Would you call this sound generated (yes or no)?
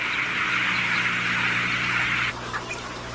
no